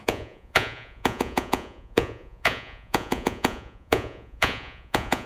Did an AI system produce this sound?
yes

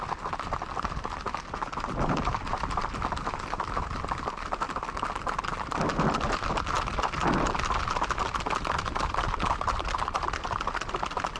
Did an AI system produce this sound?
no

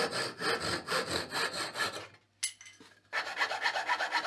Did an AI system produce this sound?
no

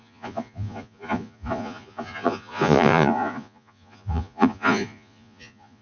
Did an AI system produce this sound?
yes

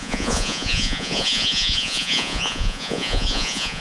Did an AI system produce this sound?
yes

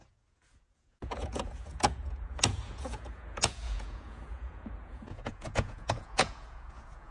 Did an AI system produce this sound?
yes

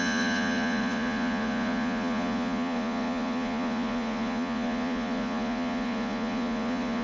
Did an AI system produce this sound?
yes